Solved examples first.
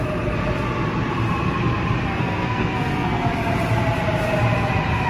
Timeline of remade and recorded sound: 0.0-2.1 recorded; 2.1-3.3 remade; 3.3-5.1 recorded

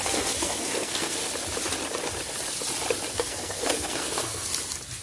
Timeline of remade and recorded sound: 0.0-1.2 remade; 1.2-3.1 recorded; 3.1-4.5 remade; 4.5-5.0 recorded

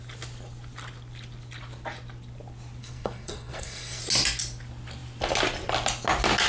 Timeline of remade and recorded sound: 0.0-2.8 recorded; 2.8-4.0 remade; 4.0-6.5 recorded

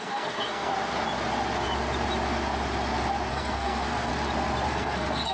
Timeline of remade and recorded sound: 0.0-0.7 remade; 0.7-3.3 recorded; 3.3-4.1 remade; 4.1-4.7 recorded; 4.7-5.3 remade

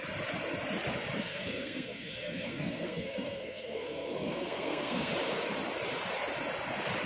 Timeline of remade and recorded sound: 0.0-1.2 recorded; 1.2-5.1 remade; 5.1-7.1 recorded

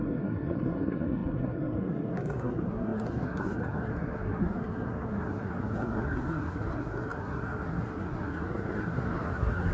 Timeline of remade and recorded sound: 0.0-9.7 remade

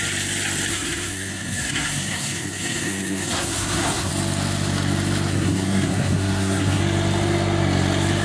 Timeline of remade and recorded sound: 0.0-0.7 recorded; 0.7-4.1 remade; 4.1-5.3 recorded; 5.3-6.8 remade; 6.8-8.2 recorded